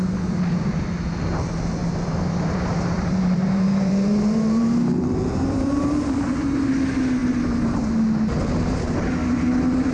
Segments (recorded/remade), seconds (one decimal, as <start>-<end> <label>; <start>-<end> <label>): 0.0-1.8 recorded; 1.8-5.8 remade; 5.8-7.2 recorded; 7.2-8.0 remade; 8.0-9.9 recorded